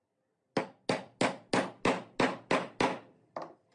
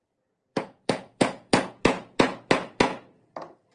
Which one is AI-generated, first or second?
second